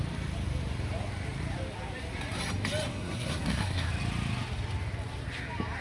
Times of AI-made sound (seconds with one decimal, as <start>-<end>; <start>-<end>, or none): 2.9-3.9